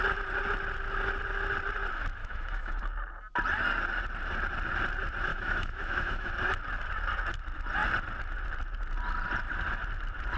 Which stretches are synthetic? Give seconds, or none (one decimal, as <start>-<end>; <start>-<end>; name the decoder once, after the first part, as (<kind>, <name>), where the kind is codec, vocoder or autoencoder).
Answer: 2.2-2.8 (autoencoder, DAC-VAE); 5.3-6.3